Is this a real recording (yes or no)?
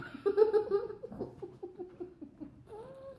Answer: yes